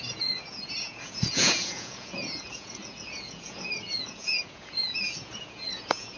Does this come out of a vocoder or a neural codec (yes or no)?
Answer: yes